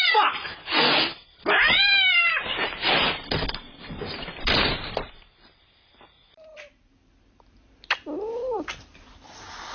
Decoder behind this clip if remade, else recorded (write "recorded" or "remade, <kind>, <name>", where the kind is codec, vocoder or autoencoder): remade, vocoder, BigVGAN v2